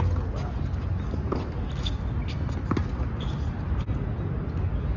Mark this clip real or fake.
real